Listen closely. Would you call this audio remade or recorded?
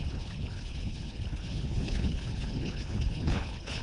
remade